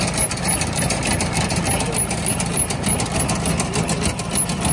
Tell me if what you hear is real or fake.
real